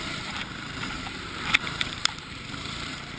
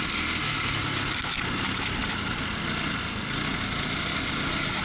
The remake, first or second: first